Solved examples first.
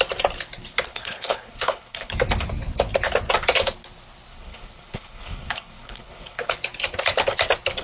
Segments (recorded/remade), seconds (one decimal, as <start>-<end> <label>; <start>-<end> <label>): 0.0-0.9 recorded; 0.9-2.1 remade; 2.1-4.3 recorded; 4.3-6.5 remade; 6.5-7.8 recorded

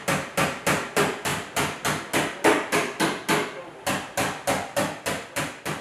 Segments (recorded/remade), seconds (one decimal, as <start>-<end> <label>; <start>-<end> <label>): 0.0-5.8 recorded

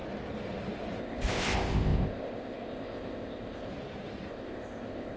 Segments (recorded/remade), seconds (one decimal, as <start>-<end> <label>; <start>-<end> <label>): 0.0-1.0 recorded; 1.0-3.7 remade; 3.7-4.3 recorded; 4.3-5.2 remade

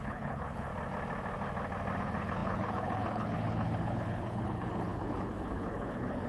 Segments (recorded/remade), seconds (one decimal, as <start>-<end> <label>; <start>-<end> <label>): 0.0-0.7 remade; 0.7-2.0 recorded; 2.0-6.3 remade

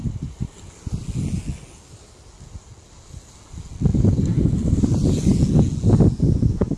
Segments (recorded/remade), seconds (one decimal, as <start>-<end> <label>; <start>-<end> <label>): 0.0-3.9 recorded; 3.9-5.4 remade; 5.4-6.8 recorded

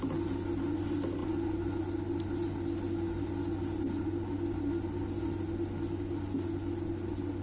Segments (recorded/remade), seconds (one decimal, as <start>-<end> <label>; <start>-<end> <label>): 0.0-7.4 recorded